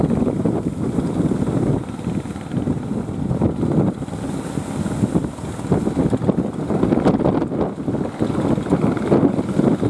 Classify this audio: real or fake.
real